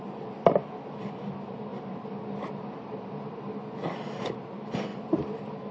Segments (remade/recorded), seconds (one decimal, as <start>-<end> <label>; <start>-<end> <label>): 0.0-5.7 recorded